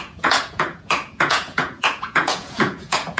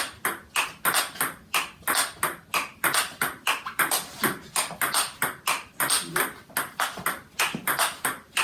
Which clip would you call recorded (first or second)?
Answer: second